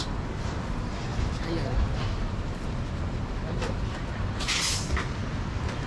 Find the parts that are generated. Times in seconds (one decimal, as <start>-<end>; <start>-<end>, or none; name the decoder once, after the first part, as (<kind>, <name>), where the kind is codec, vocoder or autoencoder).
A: 0.0-5.2 (vocoder, BigVGAN v2)